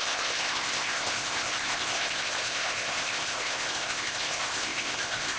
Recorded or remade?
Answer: remade